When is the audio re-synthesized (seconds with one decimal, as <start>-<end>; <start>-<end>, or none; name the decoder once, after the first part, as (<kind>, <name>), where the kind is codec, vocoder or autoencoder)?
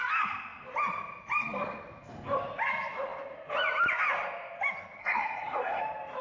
5.0-5.8 (codec, SNAC)